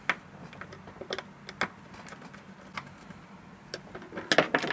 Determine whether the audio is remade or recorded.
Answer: recorded